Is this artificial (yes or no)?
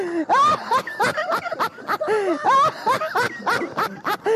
no